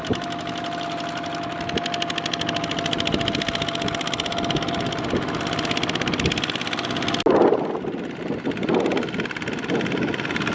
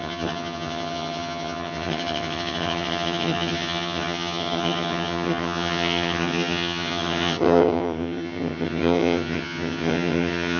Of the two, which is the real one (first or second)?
first